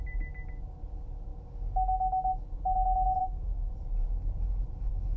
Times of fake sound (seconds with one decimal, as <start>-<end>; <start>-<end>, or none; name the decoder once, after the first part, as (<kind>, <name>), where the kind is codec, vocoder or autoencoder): 3.2-3.7 (autoencoder, DAC-VAE)